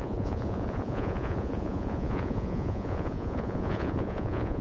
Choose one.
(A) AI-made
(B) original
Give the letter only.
A